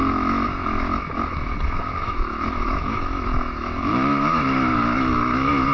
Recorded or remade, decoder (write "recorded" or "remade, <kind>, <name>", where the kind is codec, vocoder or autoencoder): remade, autoencoder, DAC-VAE